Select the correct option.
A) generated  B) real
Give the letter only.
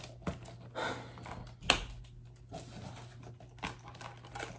B